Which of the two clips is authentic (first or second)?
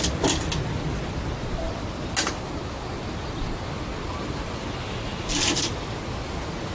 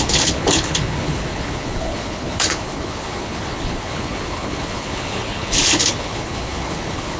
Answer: first